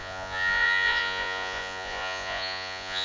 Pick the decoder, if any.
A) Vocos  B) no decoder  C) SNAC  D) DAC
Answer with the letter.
A